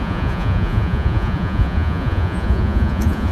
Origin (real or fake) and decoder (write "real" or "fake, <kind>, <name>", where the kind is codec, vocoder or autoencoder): fake, vocoder, Vocos